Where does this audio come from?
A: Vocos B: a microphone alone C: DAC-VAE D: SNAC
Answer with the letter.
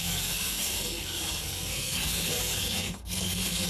D